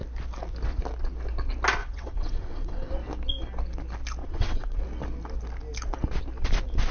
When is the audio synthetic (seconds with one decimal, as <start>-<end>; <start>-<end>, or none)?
1.8-2.9; 4.2-4.8